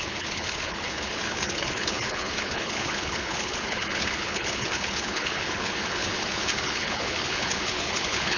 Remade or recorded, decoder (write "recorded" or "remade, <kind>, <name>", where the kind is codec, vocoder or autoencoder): remade, codec, HILCodec